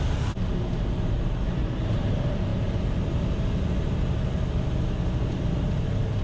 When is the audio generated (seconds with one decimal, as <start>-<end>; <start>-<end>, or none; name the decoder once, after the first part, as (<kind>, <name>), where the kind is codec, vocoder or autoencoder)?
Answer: none